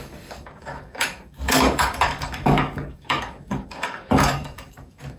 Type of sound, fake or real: fake